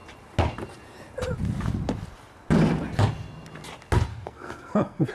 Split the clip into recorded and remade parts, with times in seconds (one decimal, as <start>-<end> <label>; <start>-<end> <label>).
0.0-4.1 recorded; 4.1-5.1 remade